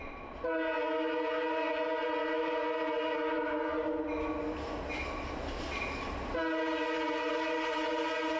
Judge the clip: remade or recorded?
recorded